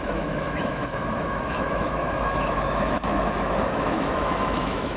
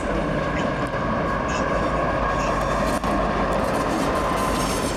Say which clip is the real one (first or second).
second